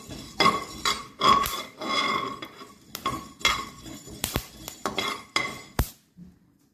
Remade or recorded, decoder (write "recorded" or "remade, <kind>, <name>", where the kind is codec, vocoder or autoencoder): recorded